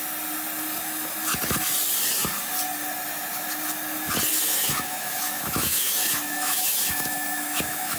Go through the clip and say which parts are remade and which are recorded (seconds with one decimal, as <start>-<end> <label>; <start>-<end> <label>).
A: 0.0-4.3 recorded; 4.3-8.0 remade

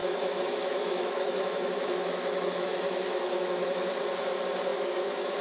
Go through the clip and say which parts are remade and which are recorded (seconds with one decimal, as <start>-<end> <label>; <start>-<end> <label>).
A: 0.0-2.8 remade; 2.8-3.2 recorded; 3.2-4.0 remade; 4.0-4.7 recorded; 4.7-5.4 remade

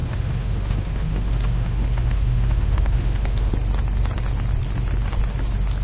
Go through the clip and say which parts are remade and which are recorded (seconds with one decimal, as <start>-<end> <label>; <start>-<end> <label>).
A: 0.0-3.5 remade; 3.5-5.8 recorded

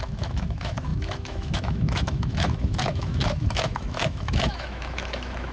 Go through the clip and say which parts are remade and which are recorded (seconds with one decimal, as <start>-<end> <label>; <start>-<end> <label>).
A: 0.0-5.5 remade

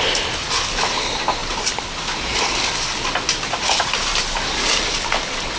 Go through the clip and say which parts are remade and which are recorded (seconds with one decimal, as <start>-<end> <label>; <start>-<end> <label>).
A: 0.0-5.6 recorded